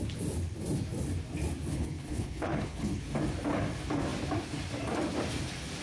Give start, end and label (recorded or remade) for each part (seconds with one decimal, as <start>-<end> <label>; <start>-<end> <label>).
0.0-1.7 recorded; 1.7-3.0 remade; 3.0-5.8 recorded